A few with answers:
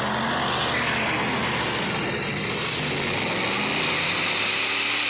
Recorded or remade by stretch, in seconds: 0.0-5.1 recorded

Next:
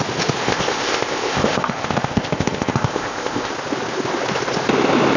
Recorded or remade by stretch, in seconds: 0.0-0.4 recorded; 0.4-3.5 remade; 3.5-5.2 recorded

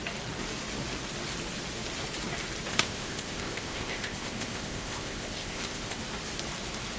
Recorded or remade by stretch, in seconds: 0.0-2.7 recorded; 2.7-6.0 remade; 6.0-7.0 recorded

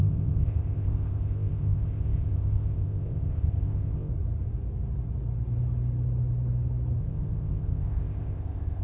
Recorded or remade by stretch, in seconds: 0.0-4.1 remade; 4.1-7.0 recorded; 7.0-8.8 remade

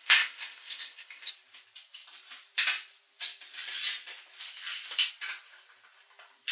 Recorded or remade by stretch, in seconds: 0.0-1.3 remade; 1.3-6.5 recorded

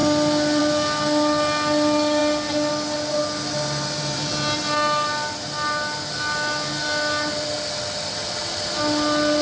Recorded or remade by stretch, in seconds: 0.0-9.4 recorded

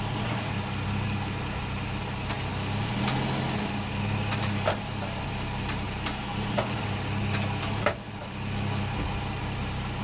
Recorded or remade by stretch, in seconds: 0.0-10.0 recorded